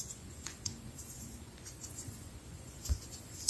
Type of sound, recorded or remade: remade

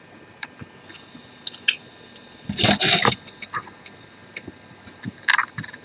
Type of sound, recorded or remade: recorded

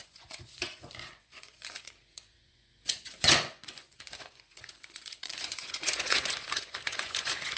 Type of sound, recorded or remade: remade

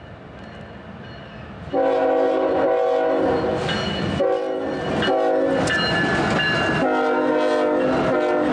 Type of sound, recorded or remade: recorded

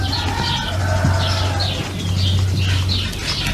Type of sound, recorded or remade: recorded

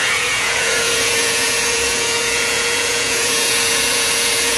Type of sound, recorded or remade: remade